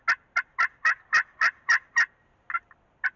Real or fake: real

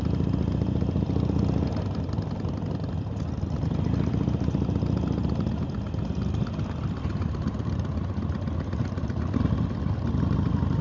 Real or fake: real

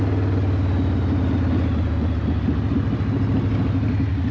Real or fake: real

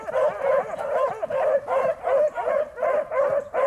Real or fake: fake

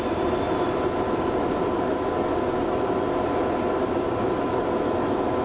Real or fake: real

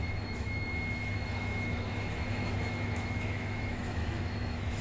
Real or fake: fake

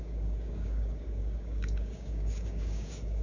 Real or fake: fake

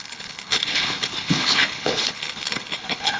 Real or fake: fake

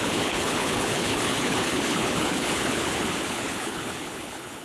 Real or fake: fake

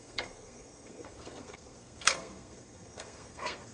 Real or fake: fake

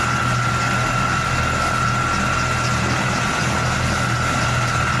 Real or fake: real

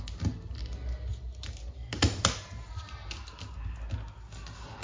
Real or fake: real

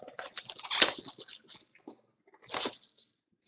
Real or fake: fake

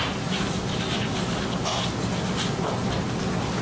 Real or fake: real